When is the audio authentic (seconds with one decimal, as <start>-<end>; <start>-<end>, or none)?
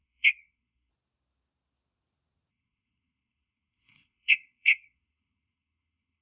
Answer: 0.9-2.5